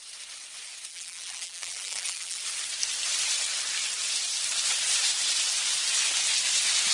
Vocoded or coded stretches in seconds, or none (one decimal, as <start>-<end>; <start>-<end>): 0.9-2.4